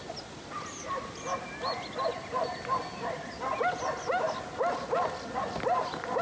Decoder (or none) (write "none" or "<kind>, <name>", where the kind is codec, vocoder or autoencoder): none